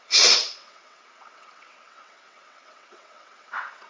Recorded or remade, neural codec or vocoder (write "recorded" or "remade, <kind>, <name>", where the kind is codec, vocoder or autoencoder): remade, vocoder, WaveNeXt